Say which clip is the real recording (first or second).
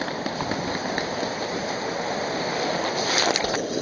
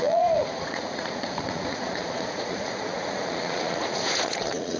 first